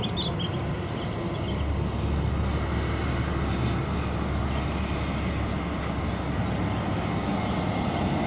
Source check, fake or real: real